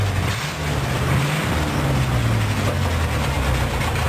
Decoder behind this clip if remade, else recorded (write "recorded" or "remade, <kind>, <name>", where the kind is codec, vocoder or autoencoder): recorded